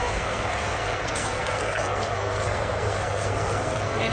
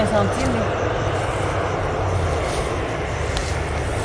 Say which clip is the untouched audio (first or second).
second